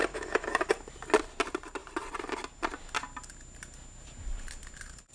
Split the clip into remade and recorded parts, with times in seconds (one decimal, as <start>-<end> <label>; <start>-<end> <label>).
0.0-0.7 remade; 0.7-5.1 recorded